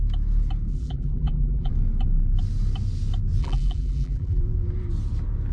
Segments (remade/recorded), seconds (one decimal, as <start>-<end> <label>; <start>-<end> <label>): 0.0-0.7 recorded; 0.7-1.7 remade; 1.7-3.4 recorded; 3.4-4.4 remade; 4.4-5.5 recorded